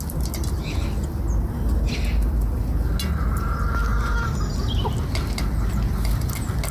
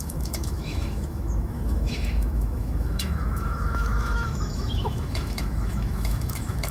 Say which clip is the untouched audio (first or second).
first